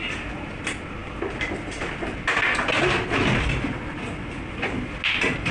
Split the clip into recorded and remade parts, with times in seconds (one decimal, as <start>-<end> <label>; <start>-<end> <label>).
0.0-5.5 recorded